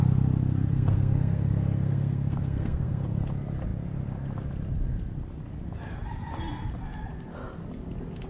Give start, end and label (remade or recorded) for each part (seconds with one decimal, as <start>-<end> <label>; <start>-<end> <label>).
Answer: 0.0-0.7 recorded; 0.7-3.2 remade; 3.2-8.3 recorded